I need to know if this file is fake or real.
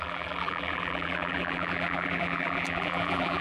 fake